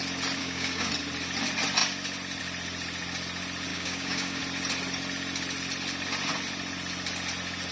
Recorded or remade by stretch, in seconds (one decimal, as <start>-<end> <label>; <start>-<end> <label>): 0.0-0.4 recorded; 0.4-0.9 remade; 0.9-3.7 recorded; 3.7-4.4 remade; 4.4-7.7 recorded